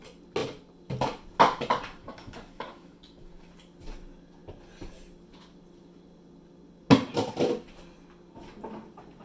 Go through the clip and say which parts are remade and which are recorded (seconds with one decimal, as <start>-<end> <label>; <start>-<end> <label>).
0.0-2.0 recorded; 2.0-3.5 remade; 3.5-9.2 recorded

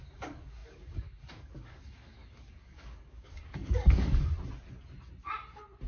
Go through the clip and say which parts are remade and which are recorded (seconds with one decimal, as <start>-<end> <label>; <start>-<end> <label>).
0.0-4.3 remade; 4.3-5.9 recorded

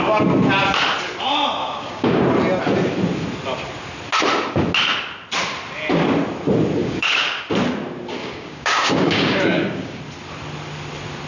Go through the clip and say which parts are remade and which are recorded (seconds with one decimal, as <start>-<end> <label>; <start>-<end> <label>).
0.0-1.6 recorded; 1.6-2.2 remade; 2.2-6.8 recorded; 6.8-7.5 remade; 7.5-8.2 recorded; 8.2-10.0 remade; 10.0-11.3 recorded

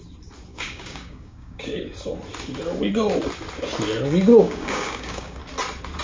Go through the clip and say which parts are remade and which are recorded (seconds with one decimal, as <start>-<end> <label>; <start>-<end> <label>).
0.0-0.5 recorded; 0.5-1.8 remade; 1.8-4.3 recorded; 4.3-5.4 remade; 5.4-6.0 recorded

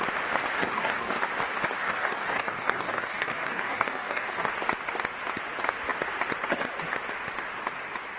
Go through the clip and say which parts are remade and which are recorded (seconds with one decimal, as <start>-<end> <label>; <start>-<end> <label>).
0.0-0.6 recorded; 0.6-1.2 remade; 1.2-1.8 recorded; 1.8-4.5 remade; 4.5-8.2 recorded